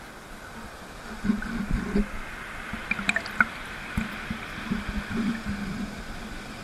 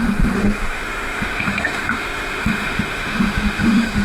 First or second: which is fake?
second